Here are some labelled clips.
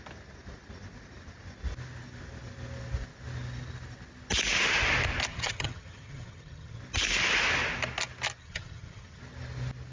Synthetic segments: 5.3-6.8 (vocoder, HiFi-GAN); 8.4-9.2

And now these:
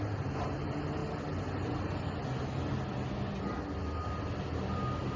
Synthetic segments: none